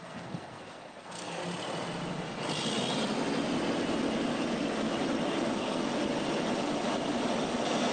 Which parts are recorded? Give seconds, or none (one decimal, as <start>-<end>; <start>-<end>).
1.4-5.5; 5.9-7.9